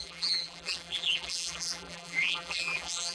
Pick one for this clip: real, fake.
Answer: fake